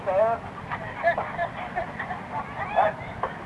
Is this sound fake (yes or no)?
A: no